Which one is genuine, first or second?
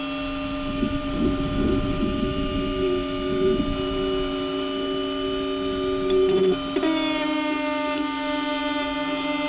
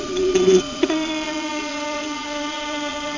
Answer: first